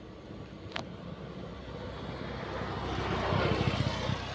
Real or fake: real